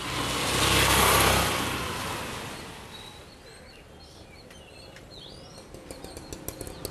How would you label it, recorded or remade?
recorded